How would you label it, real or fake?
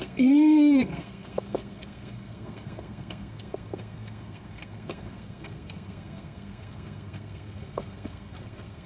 fake